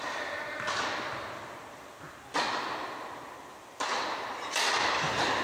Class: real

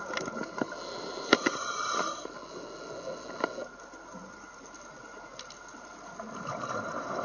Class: real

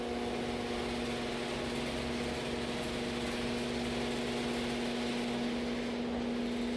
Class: real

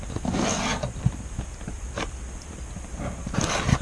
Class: real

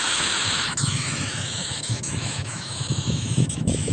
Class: fake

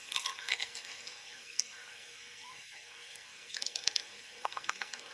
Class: fake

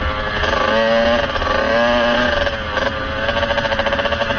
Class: real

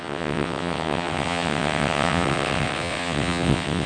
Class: fake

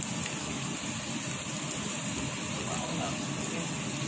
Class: real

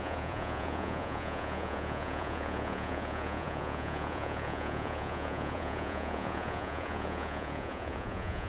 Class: fake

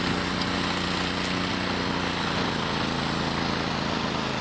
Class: real